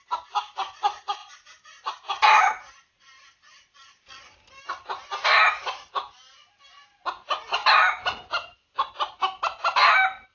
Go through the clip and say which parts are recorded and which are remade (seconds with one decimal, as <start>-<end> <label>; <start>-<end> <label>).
0.0-10.3 recorded